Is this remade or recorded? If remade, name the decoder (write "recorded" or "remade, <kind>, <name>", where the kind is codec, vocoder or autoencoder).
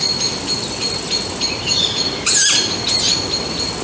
recorded